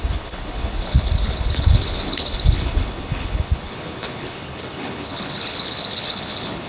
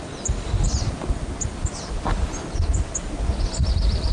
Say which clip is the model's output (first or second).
first